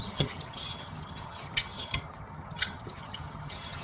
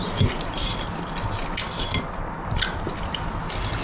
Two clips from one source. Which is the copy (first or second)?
first